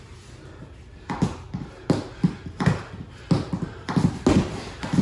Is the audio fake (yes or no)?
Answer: no